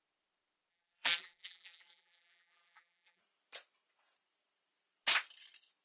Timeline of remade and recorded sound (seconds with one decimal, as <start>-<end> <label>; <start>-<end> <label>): 0.0-0.7 recorded; 0.7-3.2 remade; 3.2-5.8 recorded

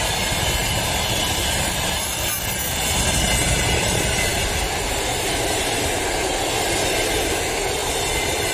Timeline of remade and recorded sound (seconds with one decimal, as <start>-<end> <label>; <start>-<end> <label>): 0.0-8.5 recorded

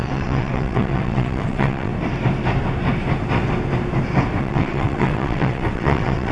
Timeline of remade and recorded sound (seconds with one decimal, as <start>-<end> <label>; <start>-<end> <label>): 0.0-1.9 remade; 1.9-4.4 recorded; 4.4-6.3 remade

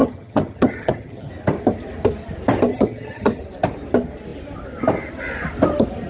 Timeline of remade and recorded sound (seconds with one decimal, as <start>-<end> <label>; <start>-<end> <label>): 0.0-1.3 remade; 1.3-2.7 recorded; 2.7-3.4 remade; 3.4-6.1 recorded

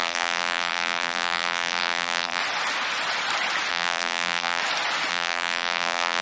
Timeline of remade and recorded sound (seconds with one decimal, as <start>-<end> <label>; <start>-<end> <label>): 0.0-2.4 remade; 2.4-3.7 recorded; 3.7-4.6 remade; 4.6-5.1 recorded; 5.1-6.2 remade

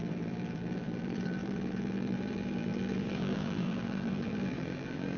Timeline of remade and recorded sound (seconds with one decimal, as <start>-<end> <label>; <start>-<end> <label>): 0.0-5.2 remade

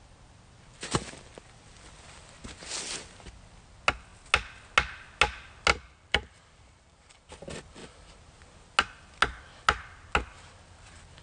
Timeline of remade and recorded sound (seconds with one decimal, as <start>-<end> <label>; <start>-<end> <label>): 0.0-5.7 recorded; 5.7-7.3 remade; 7.3-11.2 recorded